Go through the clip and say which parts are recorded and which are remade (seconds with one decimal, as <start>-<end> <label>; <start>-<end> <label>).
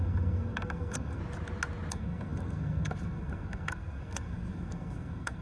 0.0-1.2 remade; 1.2-1.9 recorded; 1.9-5.4 remade